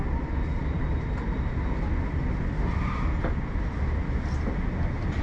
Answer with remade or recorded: recorded